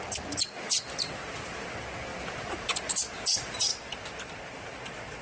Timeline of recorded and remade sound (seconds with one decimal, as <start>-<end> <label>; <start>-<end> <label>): 0.0-5.2 recorded